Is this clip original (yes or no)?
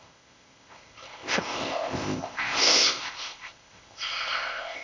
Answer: no